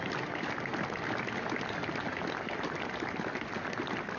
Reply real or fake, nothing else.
real